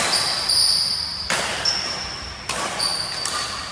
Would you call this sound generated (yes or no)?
no